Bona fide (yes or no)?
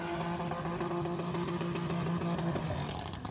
yes